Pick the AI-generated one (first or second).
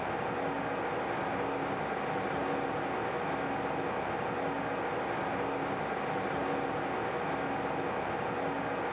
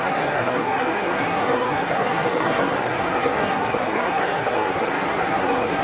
second